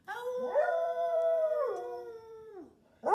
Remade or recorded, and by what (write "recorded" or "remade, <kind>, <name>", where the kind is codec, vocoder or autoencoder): remade, vocoder, BigVGAN v2